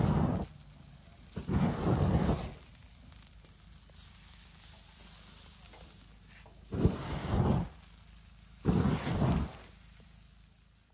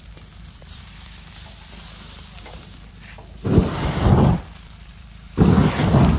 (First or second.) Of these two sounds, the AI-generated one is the second